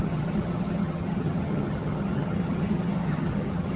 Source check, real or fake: fake